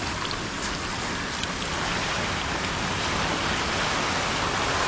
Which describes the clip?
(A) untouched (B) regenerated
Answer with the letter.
A